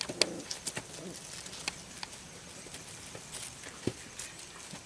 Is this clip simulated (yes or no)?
no